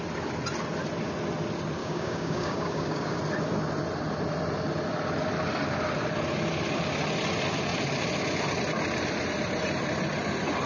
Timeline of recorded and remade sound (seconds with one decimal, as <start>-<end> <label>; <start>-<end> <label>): 0.0-1.8 recorded; 1.8-3.2 remade; 3.2-10.7 recorded